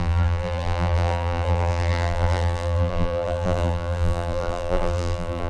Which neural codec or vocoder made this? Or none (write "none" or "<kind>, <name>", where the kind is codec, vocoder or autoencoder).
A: vocoder, BigVGAN v2